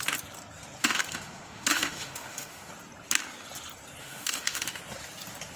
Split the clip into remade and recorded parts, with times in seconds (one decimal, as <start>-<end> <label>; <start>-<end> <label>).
0.0-0.8 recorded; 0.8-2.7 remade; 2.7-4.0 recorded; 4.0-4.8 remade; 4.8-5.6 recorded